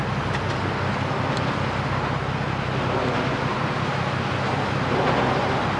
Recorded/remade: recorded